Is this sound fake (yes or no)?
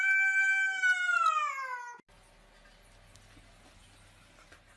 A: no